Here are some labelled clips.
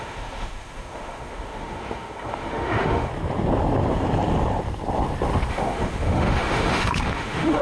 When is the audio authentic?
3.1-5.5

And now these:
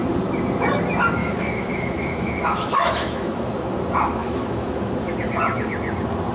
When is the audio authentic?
0.0-1.2; 3.5-4.2; 5.1-6.3

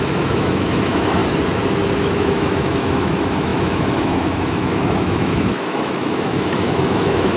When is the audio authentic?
1.2-2.0

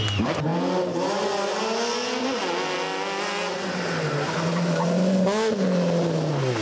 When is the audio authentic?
0.0-6.6